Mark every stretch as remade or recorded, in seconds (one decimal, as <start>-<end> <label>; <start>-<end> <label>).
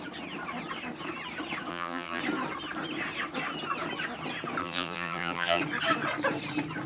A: 0.0-1.7 recorded; 1.7-2.2 remade; 2.2-4.6 recorded; 4.6-5.6 remade; 5.6-6.9 recorded